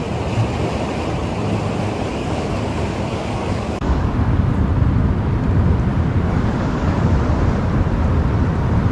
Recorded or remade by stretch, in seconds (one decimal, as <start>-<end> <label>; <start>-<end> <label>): 0.0-2.1 recorded; 2.1-4.1 remade; 4.1-5.9 recorded; 5.9-7.1 remade; 7.1-8.9 recorded